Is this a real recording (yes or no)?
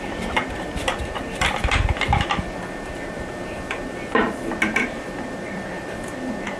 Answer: no